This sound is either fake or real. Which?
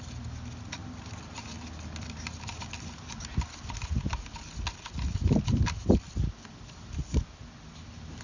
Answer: real